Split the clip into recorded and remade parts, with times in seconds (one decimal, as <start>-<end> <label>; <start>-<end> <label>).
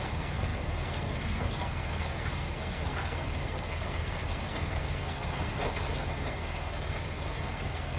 0.0-8.0 remade